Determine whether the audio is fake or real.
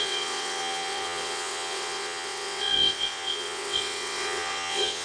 fake